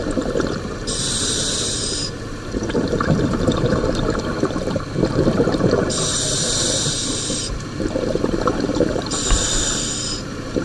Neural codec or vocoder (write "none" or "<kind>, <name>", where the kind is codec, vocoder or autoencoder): vocoder, BigVGAN v2